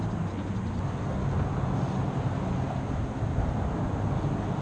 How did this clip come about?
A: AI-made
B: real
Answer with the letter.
B